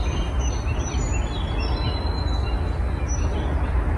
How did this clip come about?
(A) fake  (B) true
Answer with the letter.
B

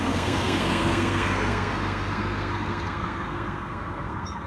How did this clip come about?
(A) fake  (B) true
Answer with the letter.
A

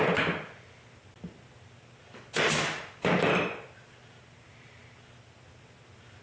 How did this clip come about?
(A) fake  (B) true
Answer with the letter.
B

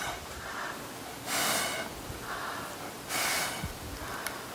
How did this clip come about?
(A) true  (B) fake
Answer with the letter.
A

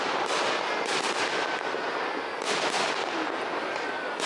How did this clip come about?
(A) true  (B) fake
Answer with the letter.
A